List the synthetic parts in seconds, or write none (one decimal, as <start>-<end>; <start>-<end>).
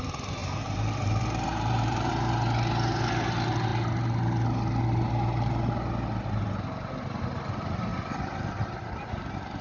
0.4-2.1